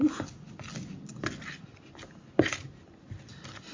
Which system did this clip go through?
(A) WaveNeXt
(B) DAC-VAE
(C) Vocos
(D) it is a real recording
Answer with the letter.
D